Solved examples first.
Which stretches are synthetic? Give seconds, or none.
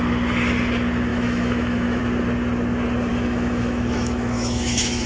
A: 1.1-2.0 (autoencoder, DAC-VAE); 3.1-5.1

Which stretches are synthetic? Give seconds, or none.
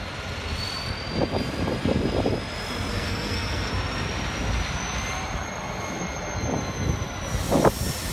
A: 2.9-3.7 (codec, SNAC)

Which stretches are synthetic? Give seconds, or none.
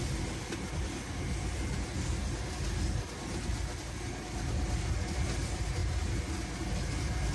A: none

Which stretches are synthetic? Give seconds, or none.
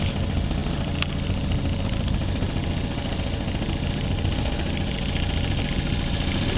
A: none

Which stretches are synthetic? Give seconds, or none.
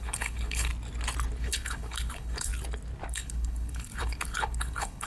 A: 0.0-0.7 (codec, HILCodec); 1.4-2.5; 3.1-5.1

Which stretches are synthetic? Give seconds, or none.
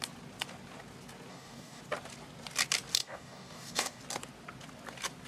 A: 1.3-1.8 (codec, DAC); 3.0-4.0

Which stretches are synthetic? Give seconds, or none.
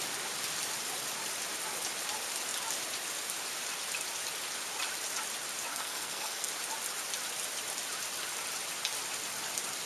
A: 5.7-6.5 (codec, SNAC)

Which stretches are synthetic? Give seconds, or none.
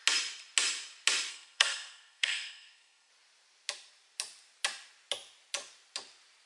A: 1.3-3.1 (codec, SNAC)